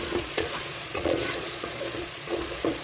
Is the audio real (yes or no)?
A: no